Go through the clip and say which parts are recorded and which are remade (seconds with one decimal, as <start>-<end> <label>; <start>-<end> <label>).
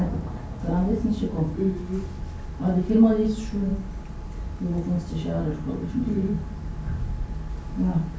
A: 0.0-8.2 recorded